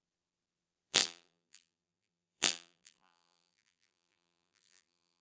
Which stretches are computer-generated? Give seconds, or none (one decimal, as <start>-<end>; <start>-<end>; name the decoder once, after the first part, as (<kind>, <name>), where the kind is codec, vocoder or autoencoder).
0.0-5.2 (vocoder, BigVGAN v2)

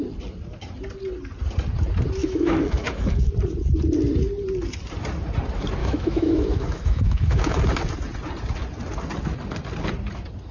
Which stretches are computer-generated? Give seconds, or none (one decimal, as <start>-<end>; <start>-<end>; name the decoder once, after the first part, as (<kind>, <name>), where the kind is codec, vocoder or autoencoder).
2.2-3.3 (autoencoder, DAC-VAE); 5.8-7.6

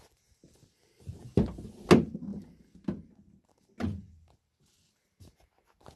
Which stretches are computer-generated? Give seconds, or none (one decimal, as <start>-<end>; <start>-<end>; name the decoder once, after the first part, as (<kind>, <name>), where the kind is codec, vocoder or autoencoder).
none

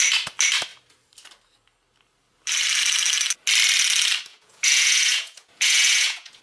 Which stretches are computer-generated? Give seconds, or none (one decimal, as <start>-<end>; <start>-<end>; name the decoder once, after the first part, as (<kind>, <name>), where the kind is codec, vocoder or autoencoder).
4.3-6.4 (vocoder, Vocos)

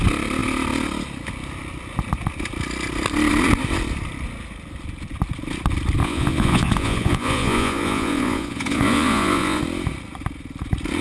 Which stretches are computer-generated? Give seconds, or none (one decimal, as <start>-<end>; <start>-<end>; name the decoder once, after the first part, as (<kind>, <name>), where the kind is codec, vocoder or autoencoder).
6.0-9.6 (vocoder, Vocos)